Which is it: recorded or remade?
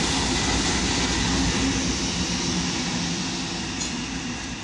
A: recorded